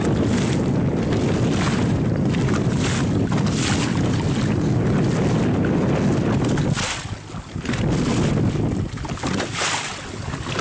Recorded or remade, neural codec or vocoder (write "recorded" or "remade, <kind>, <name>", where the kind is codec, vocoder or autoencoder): recorded